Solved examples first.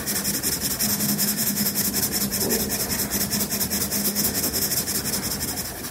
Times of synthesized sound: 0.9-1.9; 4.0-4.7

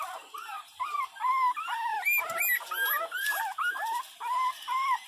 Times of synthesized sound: none

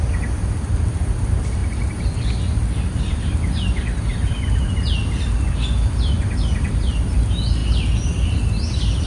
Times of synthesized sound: none

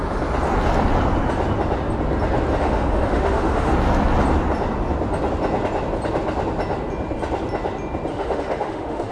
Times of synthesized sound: 2.6-3.7; 8.1-9.1

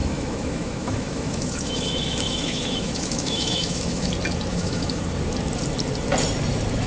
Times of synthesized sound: 0.0-4.1; 4.5-5.0